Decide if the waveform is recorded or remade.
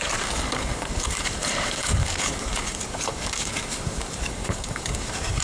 remade